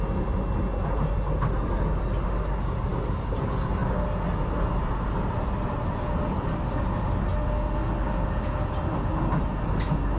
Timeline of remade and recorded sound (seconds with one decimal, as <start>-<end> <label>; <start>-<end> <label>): 0.0-10.2 recorded